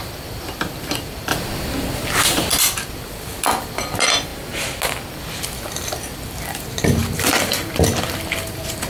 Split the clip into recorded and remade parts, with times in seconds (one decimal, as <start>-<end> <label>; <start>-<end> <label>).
0.0-1.3 remade; 1.3-2.6 recorded; 2.6-4.3 remade; 4.3-5.1 recorded; 5.1-8.9 remade